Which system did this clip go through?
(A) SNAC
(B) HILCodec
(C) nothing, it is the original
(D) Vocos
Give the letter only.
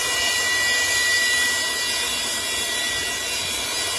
C